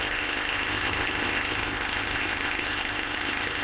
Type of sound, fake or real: fake